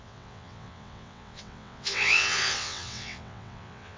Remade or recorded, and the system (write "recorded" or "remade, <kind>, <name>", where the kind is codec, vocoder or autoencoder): remade, vocoder, WaveNeXt